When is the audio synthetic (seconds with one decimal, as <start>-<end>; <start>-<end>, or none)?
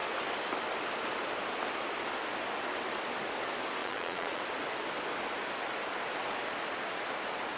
3.8-4.4